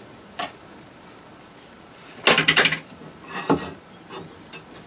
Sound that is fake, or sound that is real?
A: real